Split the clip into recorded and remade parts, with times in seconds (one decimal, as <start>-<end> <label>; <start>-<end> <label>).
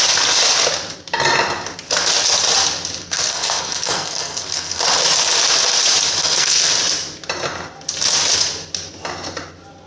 0.0-3.0 recorded; 3.0-4.8 remade; 4.8-6.2 recorded; 6.2-6.7 remade; 6.7-9.9 recorded